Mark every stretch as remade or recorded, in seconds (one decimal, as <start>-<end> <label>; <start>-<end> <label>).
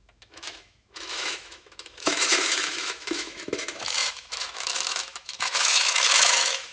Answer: 0.0-6.7 remade